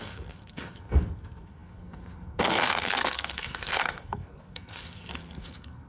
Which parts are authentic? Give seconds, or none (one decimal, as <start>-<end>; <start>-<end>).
none